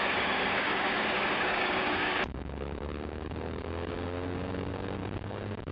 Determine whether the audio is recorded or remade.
remade